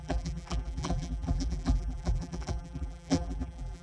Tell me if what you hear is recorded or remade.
remade